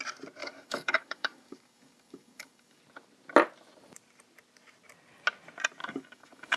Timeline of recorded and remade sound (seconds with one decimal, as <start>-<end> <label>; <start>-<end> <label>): 0.0-0.4 recorded; 0.4-2.8 remade; 2.8-5.8 recorded; 5.8-6.6 remade